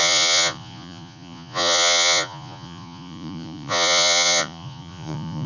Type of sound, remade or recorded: remade